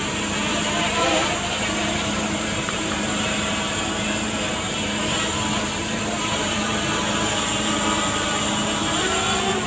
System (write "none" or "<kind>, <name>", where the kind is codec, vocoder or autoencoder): vocoder, BigVGAN v2